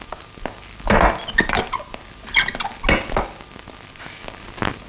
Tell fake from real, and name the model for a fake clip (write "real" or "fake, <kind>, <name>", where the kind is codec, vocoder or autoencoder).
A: real